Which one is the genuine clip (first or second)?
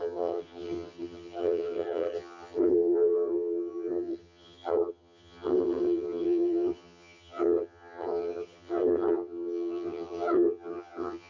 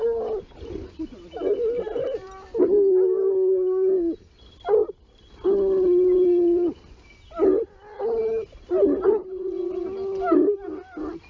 second